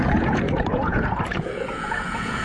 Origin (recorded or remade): remade